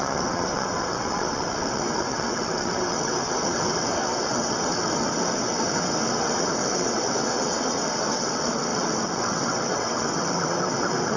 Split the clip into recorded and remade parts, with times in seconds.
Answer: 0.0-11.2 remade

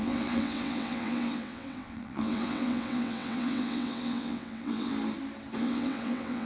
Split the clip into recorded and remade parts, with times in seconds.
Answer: 0.0-4.9 remade; 4.9-5.6 recorded; 5.6-6.5 remade

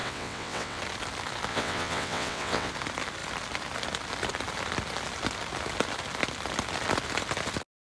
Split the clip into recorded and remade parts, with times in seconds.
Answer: 0.0-0.8 remade; 0.8-1.5 recorded; 1.5-2.7 remade; 2.7-7.9 recorded

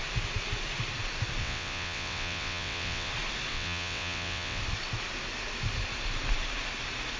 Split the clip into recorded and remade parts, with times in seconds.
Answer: 0.0-1.4 recorded; 1.4-3.1 remade; 3.1-3.5 recorded; 3.5-4.6 remade; 4.6-7.2 recorded

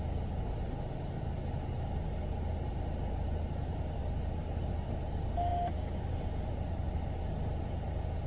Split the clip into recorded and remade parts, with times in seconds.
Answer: 0.0-8.3 recorded